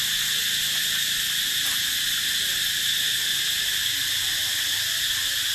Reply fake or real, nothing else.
real